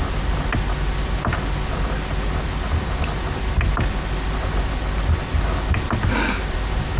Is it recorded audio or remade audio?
recorded